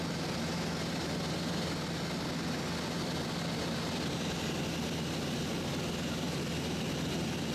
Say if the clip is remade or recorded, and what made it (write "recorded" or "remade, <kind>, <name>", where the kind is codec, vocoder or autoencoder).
recorded